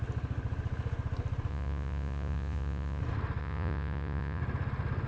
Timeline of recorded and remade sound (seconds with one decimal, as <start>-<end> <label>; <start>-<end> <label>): 0.0-1.5 recorded; 1.5-3.0 remade; 3.0-3.4 recorded; 3.4-4.4 remade; 4.4-5.1 recorded